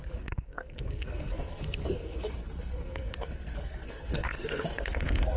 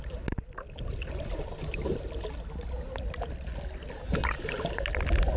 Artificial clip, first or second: first